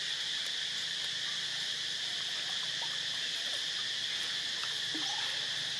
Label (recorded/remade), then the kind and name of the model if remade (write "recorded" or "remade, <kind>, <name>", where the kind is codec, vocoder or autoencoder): recorded